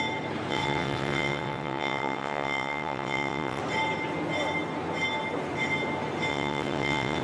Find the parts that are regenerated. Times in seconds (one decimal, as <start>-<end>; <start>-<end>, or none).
0.5-3.6; 6.3-7.2

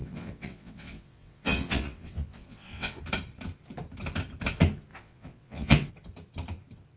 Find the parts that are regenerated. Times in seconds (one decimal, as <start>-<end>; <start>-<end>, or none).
0.0-3.0; 4.9-5.9

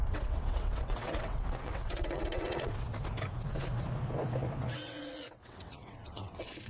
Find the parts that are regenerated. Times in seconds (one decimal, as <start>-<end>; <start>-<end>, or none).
0.0-2.9; 4.7-6.7